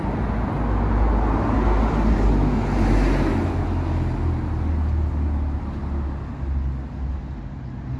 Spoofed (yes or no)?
no